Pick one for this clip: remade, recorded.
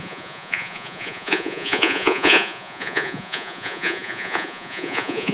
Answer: remade